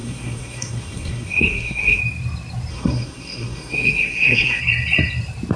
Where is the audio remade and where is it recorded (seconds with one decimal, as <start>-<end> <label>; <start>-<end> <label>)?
0.0-2.0 remade; 2.0-2.7 recorded; 2.7-4.6 remade; 4.6-5.6 recorded